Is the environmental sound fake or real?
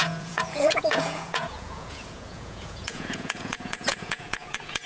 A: fake